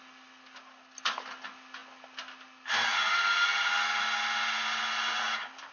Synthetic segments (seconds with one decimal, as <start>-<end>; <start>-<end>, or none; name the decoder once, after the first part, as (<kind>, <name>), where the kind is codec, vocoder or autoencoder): none